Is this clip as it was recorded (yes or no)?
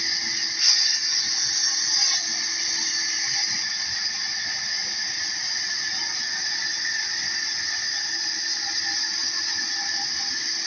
yes